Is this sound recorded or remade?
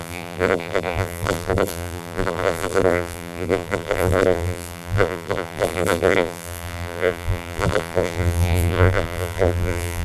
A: remade